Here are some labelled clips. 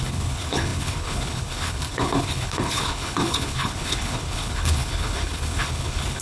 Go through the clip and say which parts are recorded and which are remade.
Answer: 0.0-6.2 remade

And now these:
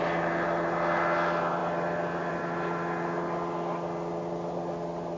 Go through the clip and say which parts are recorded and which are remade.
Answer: 0.0-5.2 recorded

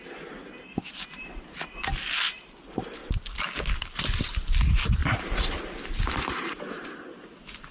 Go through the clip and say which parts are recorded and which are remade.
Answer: 0.0-0.9 recorded; 0.9-1.9 remade; 1.9-5.0 recorded; 5.0-6.9 remade; 6.9-7.7 recorded

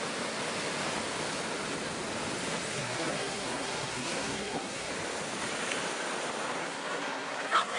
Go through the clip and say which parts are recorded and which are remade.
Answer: 0.0-2.7 recorded; 2.7-4.9 remade; 4.9-6.6 recorded; 6.6-7.8 remade

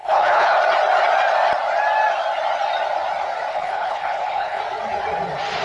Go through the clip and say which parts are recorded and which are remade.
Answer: 0.0-0.6 remade; 0.6-3.5 recorded; 3.5-4.6 remade; 4.6-5.6 recorded